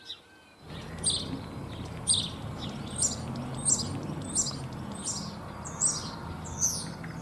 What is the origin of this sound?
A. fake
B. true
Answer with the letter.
B